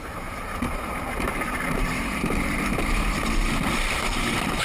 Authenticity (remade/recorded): remade